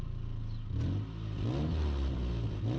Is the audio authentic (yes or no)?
yes